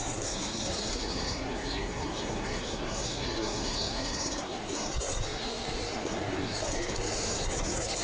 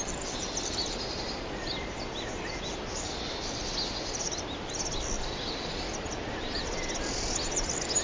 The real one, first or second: second